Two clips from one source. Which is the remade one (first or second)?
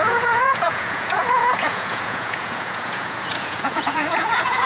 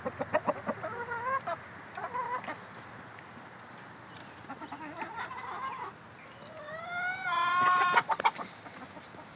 first